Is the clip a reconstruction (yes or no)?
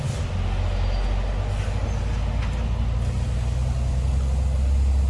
no